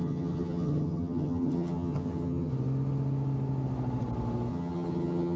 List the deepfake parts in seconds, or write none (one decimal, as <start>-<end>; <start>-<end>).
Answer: 0.0-2.5; 4.5-5.4